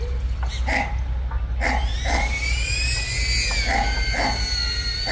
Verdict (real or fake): real